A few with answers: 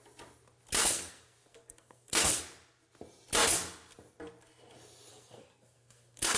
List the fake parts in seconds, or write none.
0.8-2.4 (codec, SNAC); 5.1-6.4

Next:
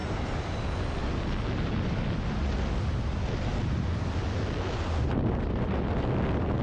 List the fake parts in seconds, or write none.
none

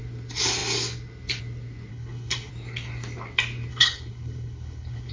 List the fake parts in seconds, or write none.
1.9-2.5 (codec, HILCodec); 3.7-5.1

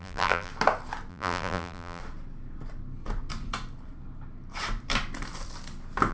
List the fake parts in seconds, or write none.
0.0-0.5 (vocoder, BigVGAN v2); 1.1-2.0